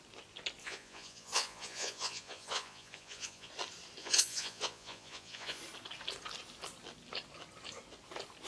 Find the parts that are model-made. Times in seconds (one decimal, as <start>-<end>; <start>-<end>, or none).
0.6-3.5; 4.0-5.6